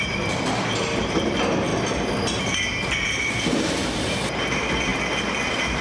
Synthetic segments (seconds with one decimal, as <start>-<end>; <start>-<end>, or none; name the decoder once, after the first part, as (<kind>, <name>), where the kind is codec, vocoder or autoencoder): 0.0-1.7 (vocoder, BigVGAN v2); 3.2-4.9